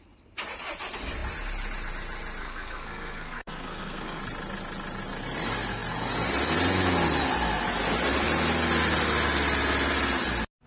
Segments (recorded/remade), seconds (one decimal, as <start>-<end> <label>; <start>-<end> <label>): 0.0-2.4 recorded; 2.4-4.2 remade; 4.2-10.7 recorded